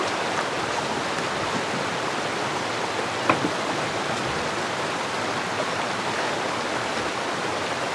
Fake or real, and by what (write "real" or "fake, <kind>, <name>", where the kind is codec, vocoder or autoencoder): real